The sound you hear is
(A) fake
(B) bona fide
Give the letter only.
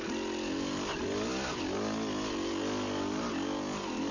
B